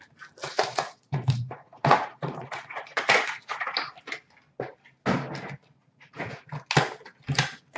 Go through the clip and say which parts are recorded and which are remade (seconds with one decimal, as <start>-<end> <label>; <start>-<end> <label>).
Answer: 0.0-0.4 recorded; 0.4-3.7 remade; 3.7-5.8 recorded; 5.8-6.4 remade; 6.4-7.8 recorded